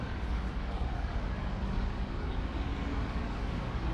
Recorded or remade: remade